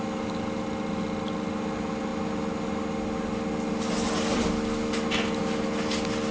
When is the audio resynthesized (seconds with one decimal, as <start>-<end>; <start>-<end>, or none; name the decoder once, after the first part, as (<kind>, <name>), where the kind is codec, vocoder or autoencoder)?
none